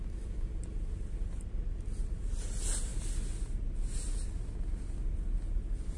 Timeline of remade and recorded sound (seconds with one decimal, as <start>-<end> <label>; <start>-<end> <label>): 0.0-6.0 recorded